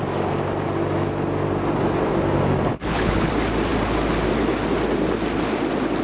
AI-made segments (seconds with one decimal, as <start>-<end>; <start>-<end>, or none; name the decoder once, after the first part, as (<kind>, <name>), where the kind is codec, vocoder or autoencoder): 2.7-3.3 (codec, HILCodec)

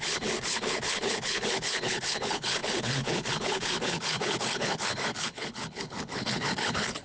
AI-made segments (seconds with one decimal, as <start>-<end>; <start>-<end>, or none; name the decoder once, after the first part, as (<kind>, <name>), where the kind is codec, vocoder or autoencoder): 0.0-7.0 (codec, HILCodec)

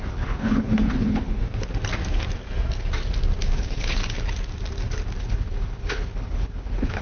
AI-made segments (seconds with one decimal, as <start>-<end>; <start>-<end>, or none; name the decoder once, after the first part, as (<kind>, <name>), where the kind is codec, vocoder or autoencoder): 0.0-1.4 (codec, HILCodec); 3.5-4.0; 5.2-7.0

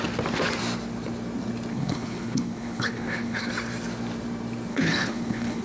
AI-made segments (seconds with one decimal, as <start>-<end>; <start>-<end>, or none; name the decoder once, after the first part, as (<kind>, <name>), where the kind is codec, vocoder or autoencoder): 1.7-3.5 (codec, HILCodec); 4.7-5.6

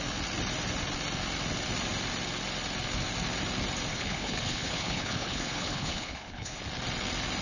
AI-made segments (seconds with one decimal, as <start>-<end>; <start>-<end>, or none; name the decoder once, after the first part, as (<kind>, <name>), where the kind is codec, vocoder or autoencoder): 3.9-6.6 (codec, HILCodec)

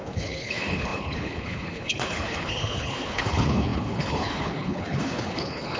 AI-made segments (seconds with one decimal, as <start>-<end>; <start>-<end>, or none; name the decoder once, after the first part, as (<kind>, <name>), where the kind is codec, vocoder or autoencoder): 0.0-5.8 (codec, HILCodec)

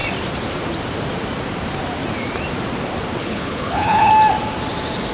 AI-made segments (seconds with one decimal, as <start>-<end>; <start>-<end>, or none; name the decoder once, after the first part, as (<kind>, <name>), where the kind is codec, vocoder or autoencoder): 3.2-4.1 (codec, HILCodec)